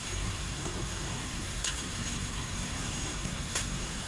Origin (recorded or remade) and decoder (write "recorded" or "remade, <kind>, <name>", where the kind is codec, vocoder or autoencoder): remade, codec, SNAC